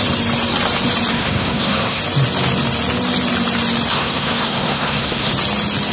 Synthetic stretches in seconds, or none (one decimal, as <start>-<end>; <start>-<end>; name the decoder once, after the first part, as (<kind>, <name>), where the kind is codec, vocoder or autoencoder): 1.1-2.0 (codec, SNAC); 3.9-5.3